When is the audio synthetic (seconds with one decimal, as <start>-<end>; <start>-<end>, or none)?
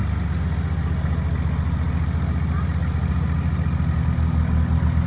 none